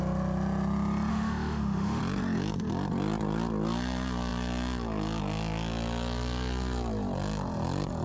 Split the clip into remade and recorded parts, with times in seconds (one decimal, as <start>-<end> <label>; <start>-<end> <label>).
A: 0.0-1.1 recorded; 1.1-2.0 remade; 2.0-8.0 recorded